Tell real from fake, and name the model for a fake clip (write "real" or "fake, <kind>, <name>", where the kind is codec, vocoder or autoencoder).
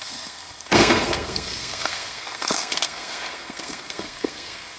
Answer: fake, codec, SNAC